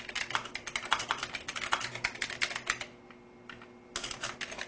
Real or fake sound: real